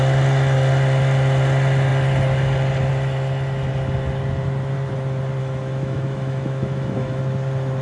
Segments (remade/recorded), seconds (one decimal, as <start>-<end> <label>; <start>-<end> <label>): 0.0-5.4 recorded; 5.4-7.2 remade; 7.2-7.8 recorded